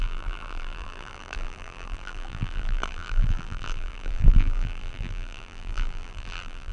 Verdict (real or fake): fake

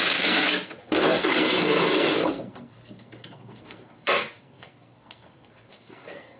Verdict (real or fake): fake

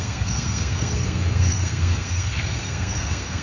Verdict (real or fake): fake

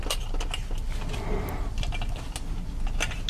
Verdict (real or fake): real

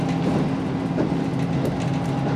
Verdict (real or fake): real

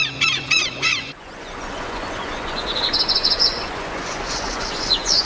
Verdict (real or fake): fake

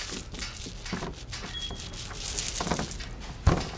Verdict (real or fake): real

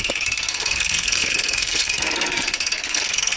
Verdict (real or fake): fake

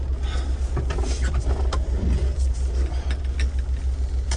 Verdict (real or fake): real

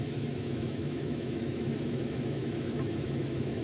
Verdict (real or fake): fake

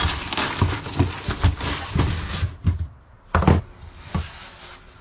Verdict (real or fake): real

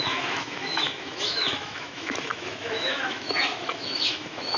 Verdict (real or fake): fake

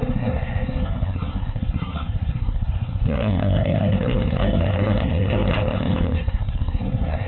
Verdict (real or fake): fake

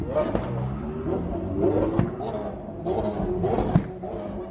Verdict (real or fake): real